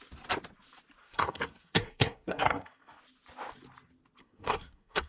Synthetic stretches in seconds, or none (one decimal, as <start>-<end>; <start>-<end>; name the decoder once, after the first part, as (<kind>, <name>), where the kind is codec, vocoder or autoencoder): 1.0-3.0 (codec, SNAC); 4.2-5.1